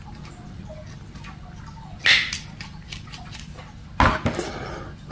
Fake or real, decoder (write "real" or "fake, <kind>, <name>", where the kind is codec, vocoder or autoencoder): real